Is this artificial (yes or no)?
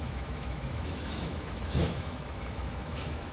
yes